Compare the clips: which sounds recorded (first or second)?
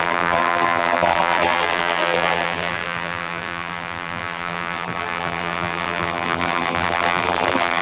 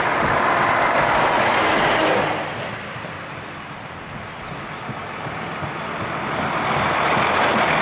second